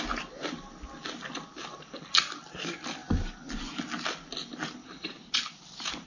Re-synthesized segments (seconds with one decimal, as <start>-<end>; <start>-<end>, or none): 4.8-6.1